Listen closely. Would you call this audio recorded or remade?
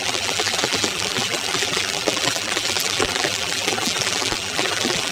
remade